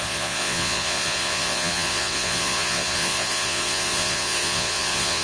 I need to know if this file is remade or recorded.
remade